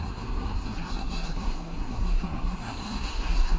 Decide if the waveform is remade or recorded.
remade